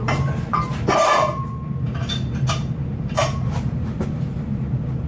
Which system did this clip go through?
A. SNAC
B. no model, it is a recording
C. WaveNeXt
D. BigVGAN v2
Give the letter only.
D